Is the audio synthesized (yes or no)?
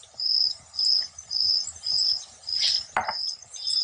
no